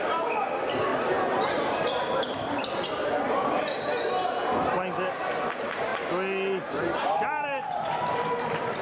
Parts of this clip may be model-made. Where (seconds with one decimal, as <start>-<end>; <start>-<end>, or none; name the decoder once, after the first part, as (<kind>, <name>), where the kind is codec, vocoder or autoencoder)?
none

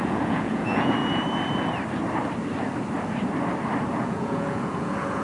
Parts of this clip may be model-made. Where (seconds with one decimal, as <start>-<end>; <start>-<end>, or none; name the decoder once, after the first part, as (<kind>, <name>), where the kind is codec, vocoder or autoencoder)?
0.0-1.0 (vocoder, Vocos); 3.9-5.2

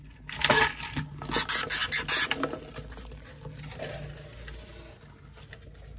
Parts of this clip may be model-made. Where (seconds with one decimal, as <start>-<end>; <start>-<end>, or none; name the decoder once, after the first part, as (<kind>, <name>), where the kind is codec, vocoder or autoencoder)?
none

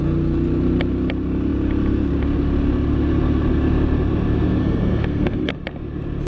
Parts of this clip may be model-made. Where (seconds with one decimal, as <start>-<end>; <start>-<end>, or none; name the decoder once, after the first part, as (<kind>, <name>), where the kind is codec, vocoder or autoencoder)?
4.6-5.5 (codec, SNAC)